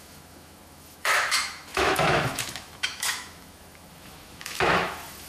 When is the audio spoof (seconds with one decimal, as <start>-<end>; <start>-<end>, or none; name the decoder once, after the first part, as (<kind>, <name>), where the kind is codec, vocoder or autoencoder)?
0.0-5.3 (autoencoder, DAC-VAE)